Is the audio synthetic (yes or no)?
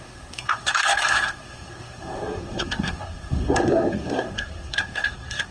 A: yes